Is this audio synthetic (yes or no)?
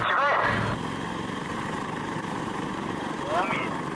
yes